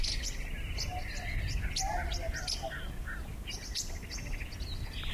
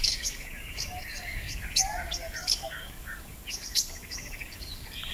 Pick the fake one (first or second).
second